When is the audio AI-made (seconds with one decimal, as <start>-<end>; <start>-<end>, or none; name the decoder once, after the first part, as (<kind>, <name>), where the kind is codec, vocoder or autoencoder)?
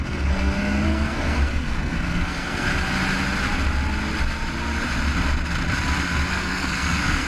0.0-2.7 (codec, SNAC); 6.3-7.3